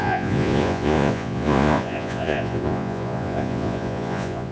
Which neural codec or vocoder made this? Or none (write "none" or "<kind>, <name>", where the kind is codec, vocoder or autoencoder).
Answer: vocoder, Vocos